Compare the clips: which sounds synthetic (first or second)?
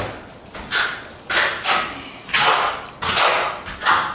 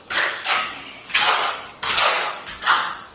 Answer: second